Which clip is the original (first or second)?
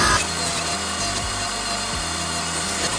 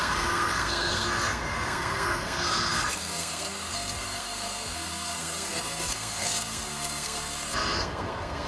first